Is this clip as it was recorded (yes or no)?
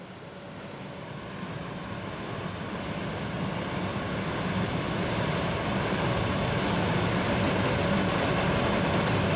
yes